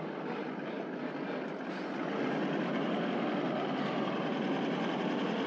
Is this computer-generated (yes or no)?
no